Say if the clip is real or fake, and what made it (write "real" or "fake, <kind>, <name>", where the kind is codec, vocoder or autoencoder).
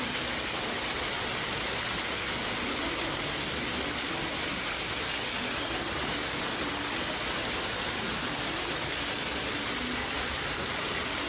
real